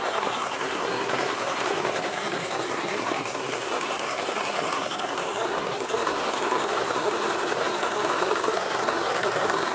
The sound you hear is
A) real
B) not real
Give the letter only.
B